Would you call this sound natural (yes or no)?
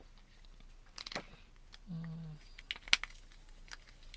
yes